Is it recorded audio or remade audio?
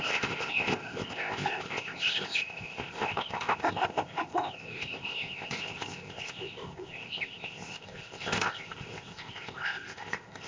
remade